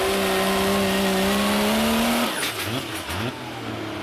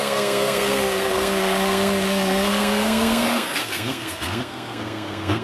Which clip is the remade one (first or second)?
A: second